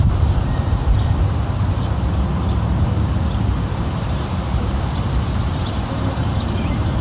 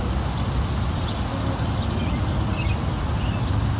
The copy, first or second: first